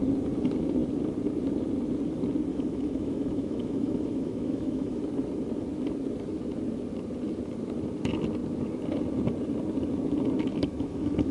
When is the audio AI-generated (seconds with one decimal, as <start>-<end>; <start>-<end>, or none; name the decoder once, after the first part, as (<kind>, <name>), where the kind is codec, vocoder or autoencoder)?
2.5-5.0 (autoencoder, DAC-VAE); 10.5-11.3